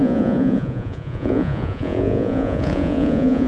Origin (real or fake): fake